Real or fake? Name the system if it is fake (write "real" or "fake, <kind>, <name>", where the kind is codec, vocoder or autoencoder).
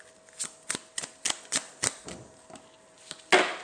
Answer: real